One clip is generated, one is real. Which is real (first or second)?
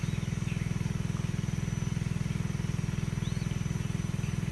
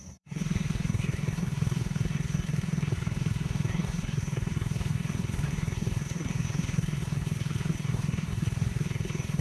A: first